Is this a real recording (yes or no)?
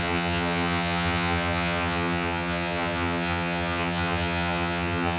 no